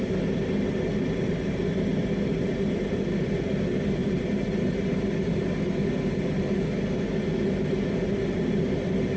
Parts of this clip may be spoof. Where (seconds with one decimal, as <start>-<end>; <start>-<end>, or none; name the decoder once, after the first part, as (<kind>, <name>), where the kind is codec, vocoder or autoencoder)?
4.0-5.4 (vocoder, BigVGAN v2)